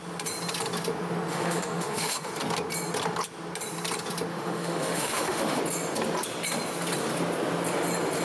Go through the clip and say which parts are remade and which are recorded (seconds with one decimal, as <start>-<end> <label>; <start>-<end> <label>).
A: 0.0-1.3 recorded; 1.3-2.3 remade; 2.3-4.3 recorded; 4.3-5.6 remade; 5.6-8.2 recorded